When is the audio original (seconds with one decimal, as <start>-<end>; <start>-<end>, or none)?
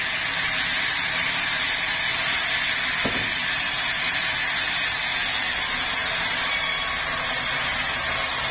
0.0-8.5